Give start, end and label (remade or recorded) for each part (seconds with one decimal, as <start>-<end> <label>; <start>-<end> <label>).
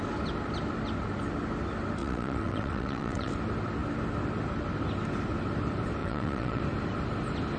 0.0-2.0 recorded; 2.0-3.3 remade; 3.3-6.0 recorded; 6.0-6.6 remade; 6.6-7.6 recorded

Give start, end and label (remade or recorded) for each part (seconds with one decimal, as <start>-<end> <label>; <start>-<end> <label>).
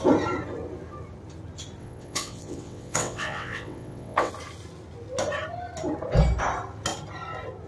0.0-1.8 recorded; 1.8-4.3 remade; 4.3-7.7 recorded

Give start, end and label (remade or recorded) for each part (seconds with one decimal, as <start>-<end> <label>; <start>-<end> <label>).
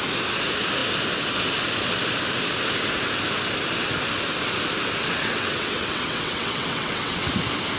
0.0-5.0 recorded; 5.0-7.3 remade; 7.3-7.8 recorded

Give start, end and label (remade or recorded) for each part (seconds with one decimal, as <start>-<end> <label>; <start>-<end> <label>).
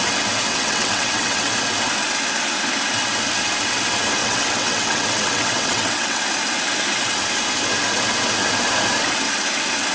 0.0-0.5 recorded; 0.5-1.5 remade; 1.5-4.2 recorded; 4.2-6.2 remade; 6.2-9.9 recorded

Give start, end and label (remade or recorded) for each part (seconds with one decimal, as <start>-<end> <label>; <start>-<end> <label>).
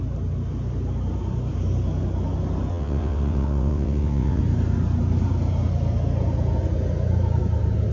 0.0-2.7 recorded; 2.7-4.4 remade; 4.4-7.9 recorded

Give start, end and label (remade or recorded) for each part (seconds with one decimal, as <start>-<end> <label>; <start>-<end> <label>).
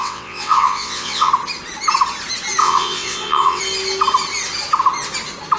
0.0-1.3 remade; 1.3-2.6 recorded; 2.6-3.6 remade; 3.6-5.6 recorded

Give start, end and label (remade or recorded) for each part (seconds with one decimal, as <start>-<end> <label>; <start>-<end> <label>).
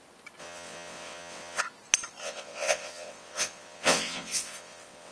0.0-0.4 recorded; 0.4-1.6 remade; 1.6-2.2 recorded; 2.2-5.1 remade